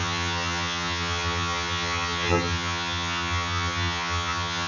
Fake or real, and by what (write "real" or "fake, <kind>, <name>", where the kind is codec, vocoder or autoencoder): fake, vocoder, HiFi-GAN